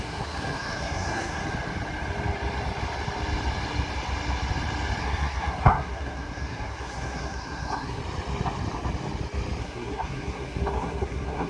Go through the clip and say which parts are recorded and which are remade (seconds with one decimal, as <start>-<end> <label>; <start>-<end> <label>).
0.0-1.4 remade; 1.4-5.0 recorded; 5.0-8.0 remade; 8.0-9.6 recorded; 9.6-11.5 remade